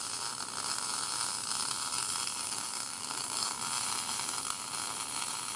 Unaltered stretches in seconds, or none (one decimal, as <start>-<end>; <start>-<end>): 0.0-2.4; 3.6-5.6

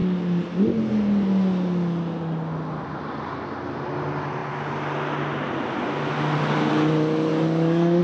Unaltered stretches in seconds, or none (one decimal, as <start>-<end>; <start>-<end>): 0.0-7.3

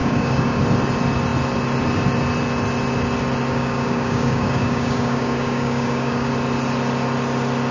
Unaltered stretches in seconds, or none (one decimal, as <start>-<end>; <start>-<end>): 0.6-3.5; 6.3-7.7

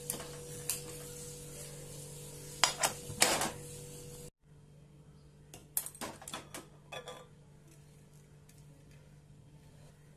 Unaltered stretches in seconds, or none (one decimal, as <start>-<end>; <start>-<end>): 0.0-10.2

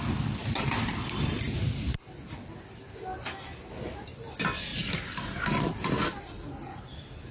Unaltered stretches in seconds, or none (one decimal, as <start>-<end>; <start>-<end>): 0.0-7.3

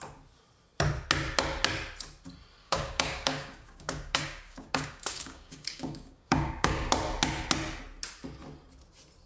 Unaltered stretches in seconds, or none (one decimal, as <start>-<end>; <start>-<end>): 0.0-2.6; 6.9-9.3